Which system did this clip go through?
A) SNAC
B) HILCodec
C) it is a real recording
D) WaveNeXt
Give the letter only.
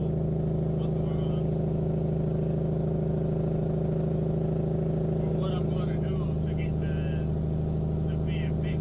C